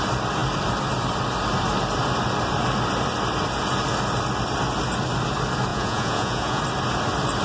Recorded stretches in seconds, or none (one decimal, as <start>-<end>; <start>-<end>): 0.0-5.7; 6.6-7.4